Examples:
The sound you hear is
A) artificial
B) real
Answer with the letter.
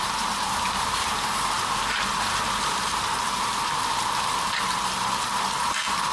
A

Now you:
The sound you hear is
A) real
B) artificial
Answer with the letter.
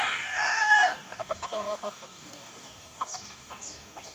B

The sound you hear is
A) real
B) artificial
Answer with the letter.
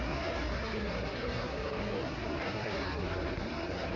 B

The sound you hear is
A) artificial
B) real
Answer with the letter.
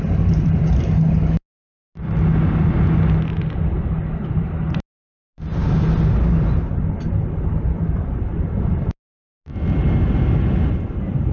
B